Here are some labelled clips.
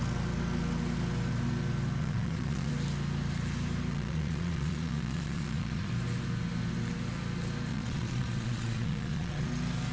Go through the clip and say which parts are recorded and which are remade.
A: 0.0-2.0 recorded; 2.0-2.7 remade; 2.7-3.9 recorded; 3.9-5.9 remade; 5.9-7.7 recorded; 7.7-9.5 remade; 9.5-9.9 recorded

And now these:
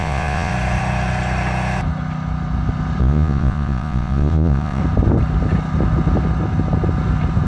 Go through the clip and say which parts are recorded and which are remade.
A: 0.0-0.5 remade; 0.5-3.0 recorded; 3.0-4.8 remade; 4.8-7.5 recorded

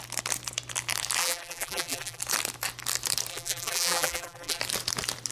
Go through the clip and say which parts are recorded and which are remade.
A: 0.0-1.2 recorded; 1.2-2.2 remade; 2.2-3.3 recorded; 3.3-4.6 remade; 4.6-5.3 recorded

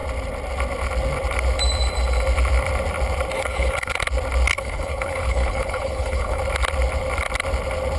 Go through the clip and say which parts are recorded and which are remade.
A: 0.0-3.4 recorded; 3.4-4.0 remade; 4.0-4.5 recorded; 4.5-6.4 remade; 6.4-8.0 recorded

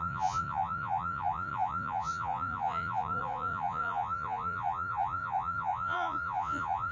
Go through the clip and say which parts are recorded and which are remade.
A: 0.0-6.9 remade

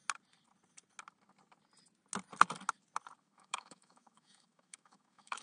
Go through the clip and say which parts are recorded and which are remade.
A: 0.0-3.2 recorded; 3.2-5.4 remade

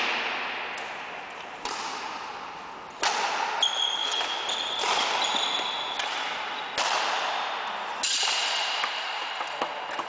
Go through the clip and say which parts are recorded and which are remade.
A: 0.0-10.1 recorded